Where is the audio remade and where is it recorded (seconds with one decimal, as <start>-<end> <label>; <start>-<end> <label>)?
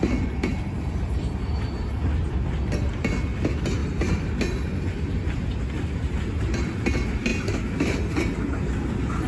0.0-9.3 recorded